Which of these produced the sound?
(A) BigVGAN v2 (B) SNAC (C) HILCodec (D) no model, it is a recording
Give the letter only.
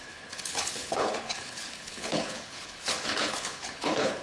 C